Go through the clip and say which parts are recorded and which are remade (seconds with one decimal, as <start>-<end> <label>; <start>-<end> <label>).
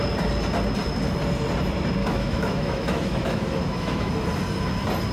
0.0-2.0 recorded; 2.0-4.1 remade; 4.1-5.1 recorded